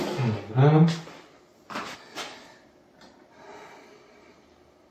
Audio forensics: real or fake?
real